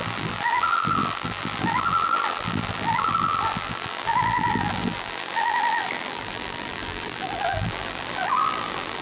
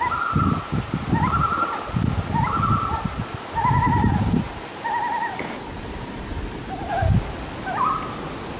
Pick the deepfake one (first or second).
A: first